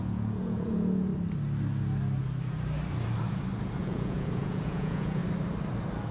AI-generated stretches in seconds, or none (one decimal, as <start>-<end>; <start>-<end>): 0.0-1.1; 3.8-5.2